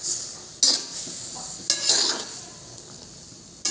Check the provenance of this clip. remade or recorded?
recorded